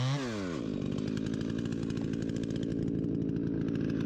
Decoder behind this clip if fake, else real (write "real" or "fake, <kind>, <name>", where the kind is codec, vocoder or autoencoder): real